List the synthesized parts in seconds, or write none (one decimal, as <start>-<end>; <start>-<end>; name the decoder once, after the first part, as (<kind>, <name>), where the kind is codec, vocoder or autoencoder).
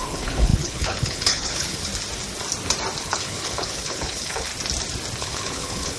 0.0-1.9 (codec, HILCodec); 3.0-4.5; 5.2-6.0